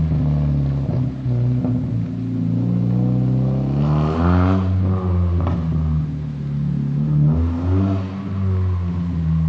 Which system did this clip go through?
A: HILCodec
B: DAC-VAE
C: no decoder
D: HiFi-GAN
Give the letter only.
C